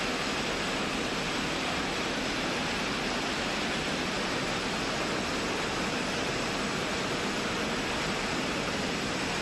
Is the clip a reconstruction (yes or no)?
no